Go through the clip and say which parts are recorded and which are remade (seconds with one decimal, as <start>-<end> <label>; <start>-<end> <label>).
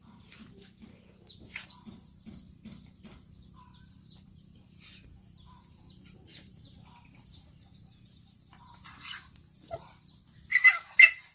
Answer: 0.0-10.2 remade; 10.2-11.3 recorded